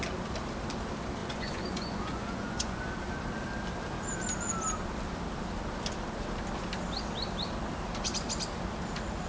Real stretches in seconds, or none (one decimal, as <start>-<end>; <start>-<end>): 0.0-1.2; 2.9-9.3